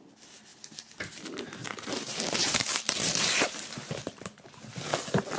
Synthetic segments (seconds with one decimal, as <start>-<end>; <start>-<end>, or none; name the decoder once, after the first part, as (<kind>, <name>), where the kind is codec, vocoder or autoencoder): 1.6-4.8 (vocoder, BigVGAN v2)